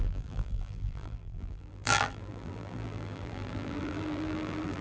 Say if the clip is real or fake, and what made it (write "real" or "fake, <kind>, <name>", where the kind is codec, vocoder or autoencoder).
fake, vocoder, BigVGAN v2